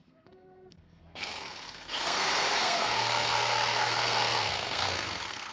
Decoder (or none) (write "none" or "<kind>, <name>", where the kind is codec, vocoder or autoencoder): codec, SNAC